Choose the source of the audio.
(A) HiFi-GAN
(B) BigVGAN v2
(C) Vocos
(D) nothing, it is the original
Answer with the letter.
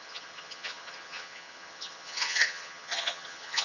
A